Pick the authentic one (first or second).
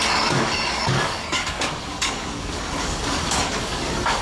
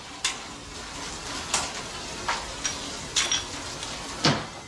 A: second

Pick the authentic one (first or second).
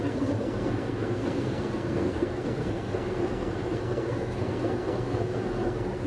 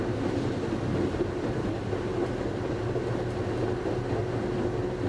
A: second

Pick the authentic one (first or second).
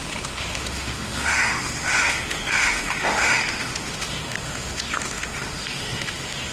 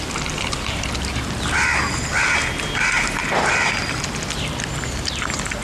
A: second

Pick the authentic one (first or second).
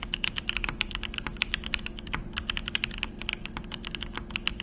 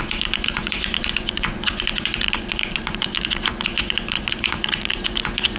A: first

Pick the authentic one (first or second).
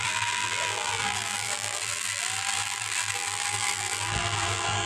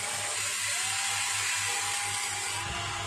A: second